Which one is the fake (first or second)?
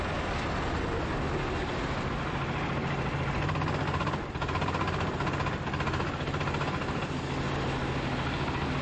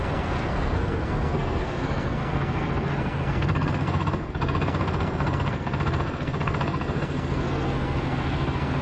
second